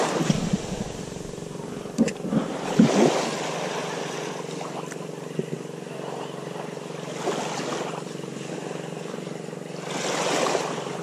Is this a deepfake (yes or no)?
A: no